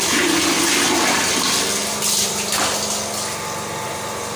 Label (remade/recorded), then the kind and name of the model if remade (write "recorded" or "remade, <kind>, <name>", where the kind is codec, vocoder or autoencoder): recorded